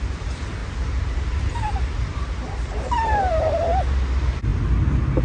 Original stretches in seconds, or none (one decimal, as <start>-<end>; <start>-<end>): 0.0-0.6; 3.6-5.2